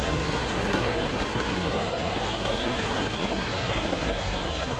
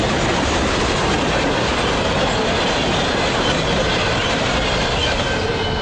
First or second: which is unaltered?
second